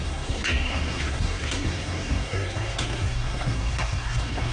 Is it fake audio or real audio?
fake